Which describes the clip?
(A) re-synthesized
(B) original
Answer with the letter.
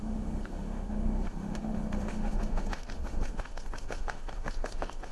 A